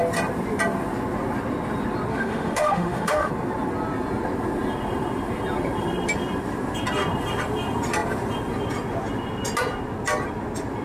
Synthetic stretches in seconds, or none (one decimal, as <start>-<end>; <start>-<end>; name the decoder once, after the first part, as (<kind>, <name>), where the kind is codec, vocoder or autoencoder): 2.1-3.3 (autoencoder, DAC-VAE)